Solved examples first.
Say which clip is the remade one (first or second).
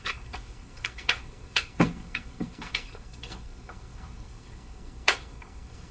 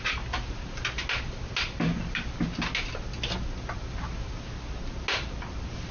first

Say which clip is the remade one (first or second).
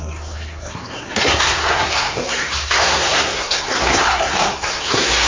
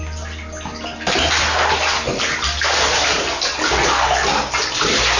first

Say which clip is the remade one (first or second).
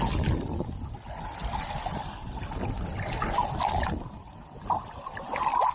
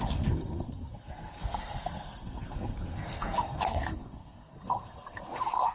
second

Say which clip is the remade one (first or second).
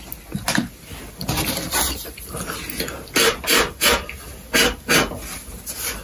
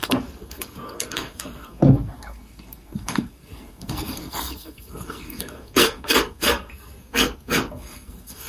second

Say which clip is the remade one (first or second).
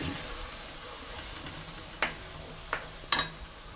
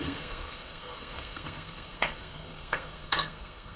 second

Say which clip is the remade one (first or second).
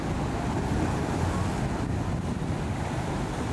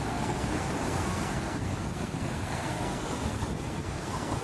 second